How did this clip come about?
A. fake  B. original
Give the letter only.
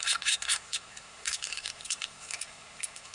A